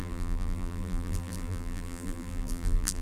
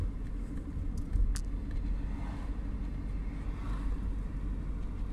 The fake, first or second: first